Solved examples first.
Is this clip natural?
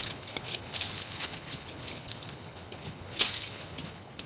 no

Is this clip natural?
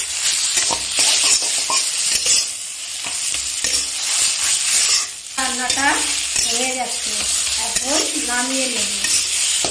yes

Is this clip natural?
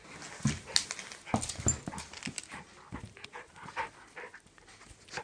yes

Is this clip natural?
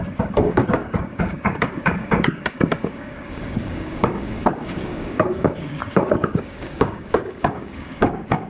no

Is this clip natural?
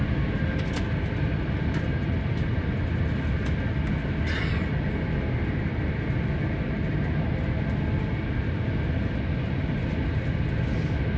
yes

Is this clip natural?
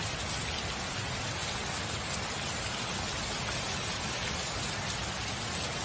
yes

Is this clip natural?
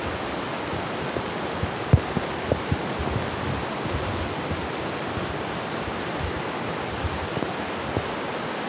yes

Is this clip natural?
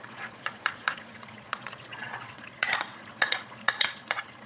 no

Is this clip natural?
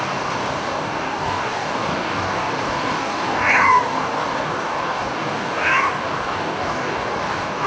no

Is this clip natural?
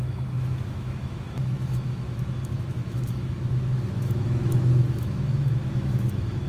no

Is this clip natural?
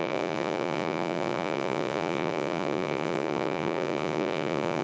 no